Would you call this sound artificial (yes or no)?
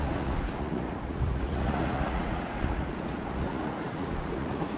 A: yes